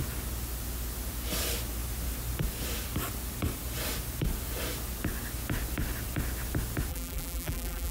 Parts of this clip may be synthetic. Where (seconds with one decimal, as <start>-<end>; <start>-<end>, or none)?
6.9-7.9